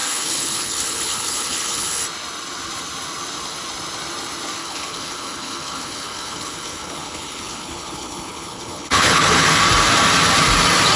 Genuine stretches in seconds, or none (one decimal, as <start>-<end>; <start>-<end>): 2.0-4.6; 9.6-11.0